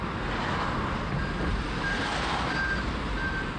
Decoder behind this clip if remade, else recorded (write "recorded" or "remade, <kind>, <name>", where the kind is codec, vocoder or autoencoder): recorded